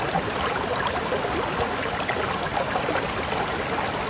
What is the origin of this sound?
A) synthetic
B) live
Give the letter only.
B